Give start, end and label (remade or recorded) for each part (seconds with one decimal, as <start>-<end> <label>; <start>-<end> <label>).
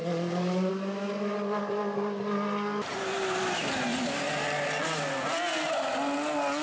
0.0-6.6 recorded